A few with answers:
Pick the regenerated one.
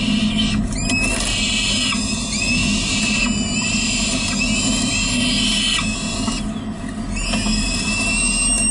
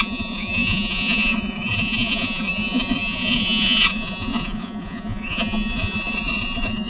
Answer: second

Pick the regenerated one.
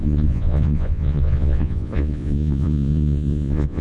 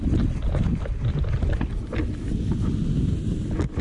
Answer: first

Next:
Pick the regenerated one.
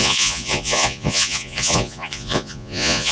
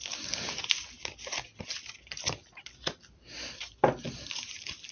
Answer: first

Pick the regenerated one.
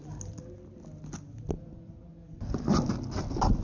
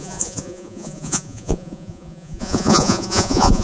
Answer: second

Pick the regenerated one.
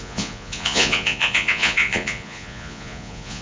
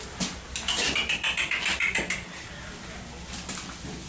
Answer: first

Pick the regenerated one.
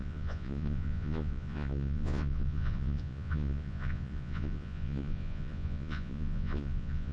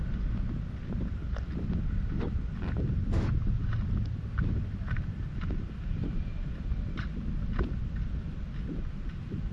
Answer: first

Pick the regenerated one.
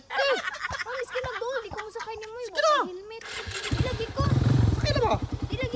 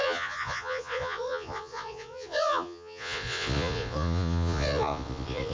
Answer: second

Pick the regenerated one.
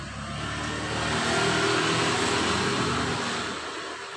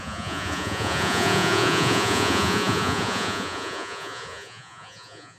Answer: second